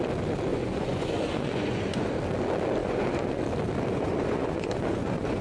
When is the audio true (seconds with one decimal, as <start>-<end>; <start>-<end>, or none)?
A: 0.0-0.5; 2.1-2.8; 3.4-3.9